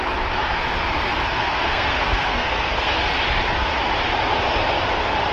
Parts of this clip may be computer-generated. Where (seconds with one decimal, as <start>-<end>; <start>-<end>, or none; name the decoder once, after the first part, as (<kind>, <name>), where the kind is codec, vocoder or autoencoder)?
1.4-2.9 (codec, SNAC)